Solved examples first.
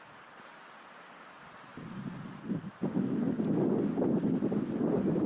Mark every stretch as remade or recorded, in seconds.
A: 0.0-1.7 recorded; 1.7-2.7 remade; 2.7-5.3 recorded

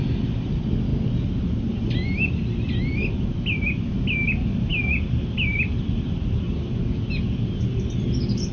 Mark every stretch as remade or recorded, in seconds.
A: 0.0-8.5 recorded

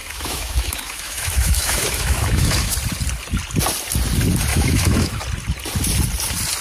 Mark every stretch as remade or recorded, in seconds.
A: 0.0-2.7 remade; 2.7-4.5 recorded; 4.5-5.2 remade; 5.2-6.6 recorded

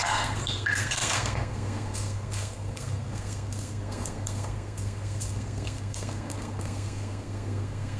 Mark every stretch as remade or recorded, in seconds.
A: 0.0-8.0 remade